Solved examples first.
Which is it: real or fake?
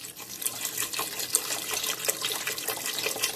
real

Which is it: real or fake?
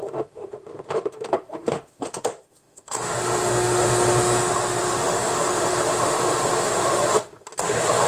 fake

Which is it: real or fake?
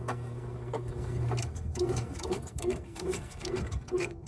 fake